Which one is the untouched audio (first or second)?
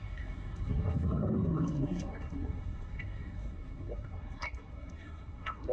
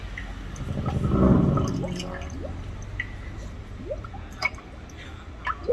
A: second